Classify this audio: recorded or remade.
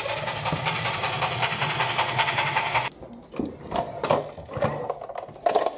recorded